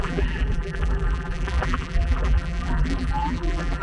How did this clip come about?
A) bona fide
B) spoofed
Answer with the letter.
B